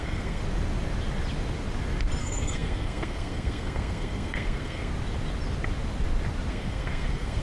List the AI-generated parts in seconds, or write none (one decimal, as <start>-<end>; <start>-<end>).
0.0-0.4; 2.2-4.9; 6.5-7.4